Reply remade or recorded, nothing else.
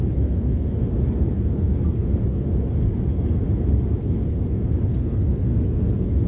recorded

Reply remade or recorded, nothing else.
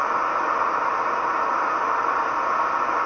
recorded